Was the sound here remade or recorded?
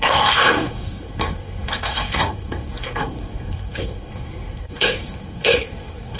remade